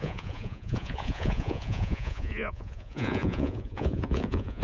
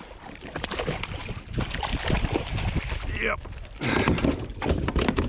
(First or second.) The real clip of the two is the second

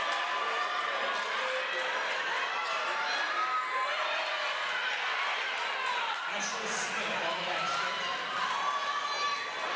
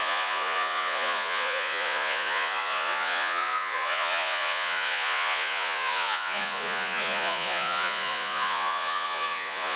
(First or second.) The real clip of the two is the first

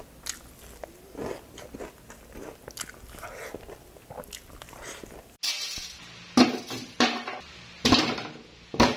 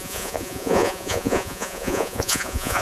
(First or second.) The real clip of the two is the first